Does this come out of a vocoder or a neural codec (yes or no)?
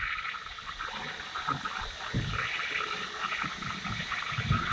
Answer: no